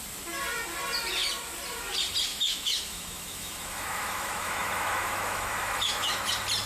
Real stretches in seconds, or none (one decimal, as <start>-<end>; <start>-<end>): 0.0-2.3; 6.3-6.7